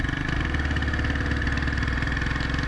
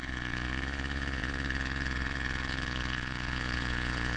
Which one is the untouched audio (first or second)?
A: first